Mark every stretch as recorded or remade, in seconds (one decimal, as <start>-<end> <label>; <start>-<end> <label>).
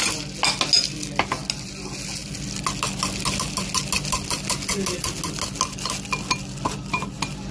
0.0-7.5 recorded